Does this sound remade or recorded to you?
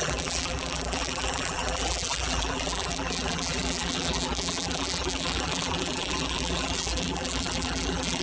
remade